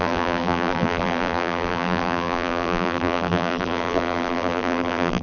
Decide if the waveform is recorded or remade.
remade